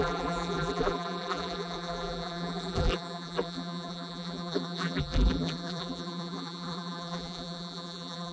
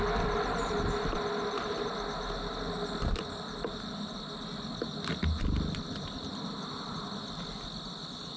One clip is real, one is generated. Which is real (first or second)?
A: second